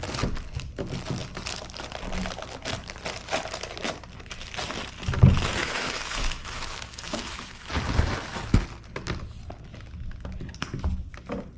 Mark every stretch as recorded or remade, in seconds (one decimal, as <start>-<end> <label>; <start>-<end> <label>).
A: 0.0-5.6 recorded; 5.6-7.7 remade; 7.7-11.6 recorded